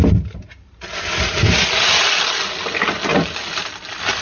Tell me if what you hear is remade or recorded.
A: recorded